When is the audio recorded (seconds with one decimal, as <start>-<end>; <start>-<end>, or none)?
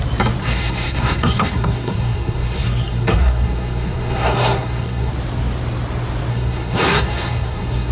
0.0-0.4; 5.1-6.3